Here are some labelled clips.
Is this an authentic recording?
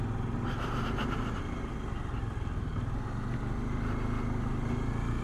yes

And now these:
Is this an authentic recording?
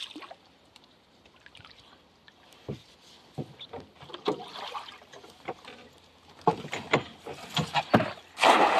yes